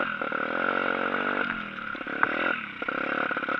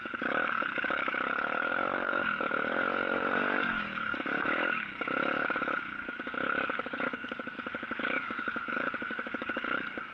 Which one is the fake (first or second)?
second